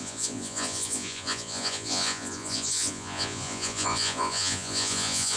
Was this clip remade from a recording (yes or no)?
yes